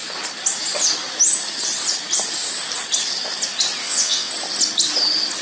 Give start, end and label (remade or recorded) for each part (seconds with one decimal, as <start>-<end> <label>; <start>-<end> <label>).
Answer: 0.0-3.8 recorded; 3.8-4.3 remade; 4.3-5.4 recorded